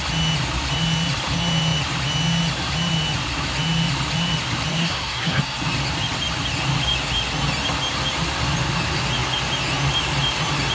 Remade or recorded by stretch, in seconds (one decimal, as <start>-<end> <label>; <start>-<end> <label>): 0.0-4.7 recorded; 4.7-5.4 remade; 5.4-10.7 recorded